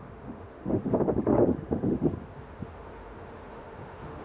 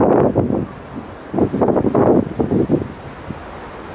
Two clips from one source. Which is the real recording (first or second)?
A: second